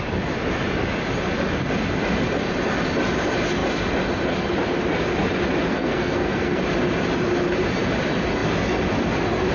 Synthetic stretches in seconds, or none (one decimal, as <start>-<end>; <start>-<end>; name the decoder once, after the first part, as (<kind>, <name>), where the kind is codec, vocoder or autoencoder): 5.7-6.6 (codec, SNAC)